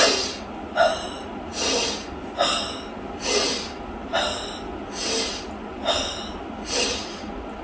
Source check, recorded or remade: recorded